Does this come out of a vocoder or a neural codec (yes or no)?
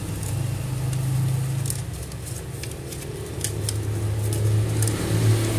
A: no